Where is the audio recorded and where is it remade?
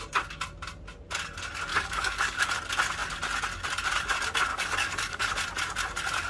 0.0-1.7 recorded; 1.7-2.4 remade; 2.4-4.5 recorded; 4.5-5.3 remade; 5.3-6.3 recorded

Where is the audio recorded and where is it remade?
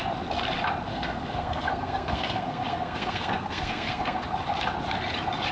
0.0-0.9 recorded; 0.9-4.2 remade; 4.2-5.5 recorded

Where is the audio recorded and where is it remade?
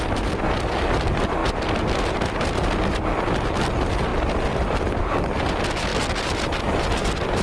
0.0-7.4 recorded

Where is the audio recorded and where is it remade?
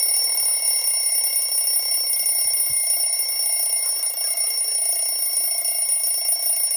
0.0-6.8 recorded